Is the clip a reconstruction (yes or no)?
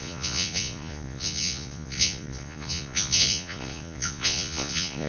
yes